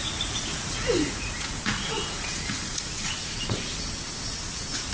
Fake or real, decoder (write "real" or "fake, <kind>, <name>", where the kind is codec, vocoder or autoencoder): fake, vocoder, Vocos